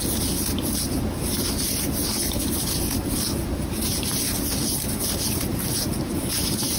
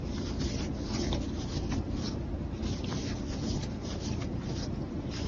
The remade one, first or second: first